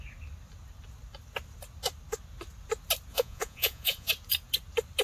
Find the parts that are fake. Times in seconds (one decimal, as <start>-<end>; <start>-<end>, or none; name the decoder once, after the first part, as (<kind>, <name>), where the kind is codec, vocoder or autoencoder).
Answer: 3.1-4.1 (vocoder, Vocos)